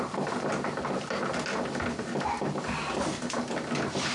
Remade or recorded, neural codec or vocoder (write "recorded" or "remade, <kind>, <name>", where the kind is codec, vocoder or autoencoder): recorded